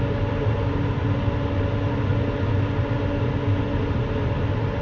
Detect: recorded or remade recorded